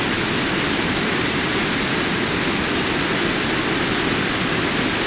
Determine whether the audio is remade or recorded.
recorded